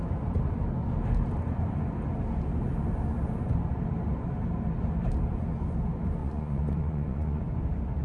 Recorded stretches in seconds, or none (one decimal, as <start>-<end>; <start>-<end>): 0.0-6.2; 7.4-8.0